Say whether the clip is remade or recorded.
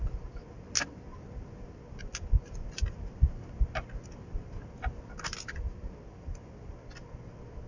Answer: recorded